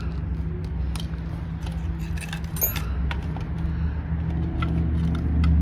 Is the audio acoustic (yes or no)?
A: yes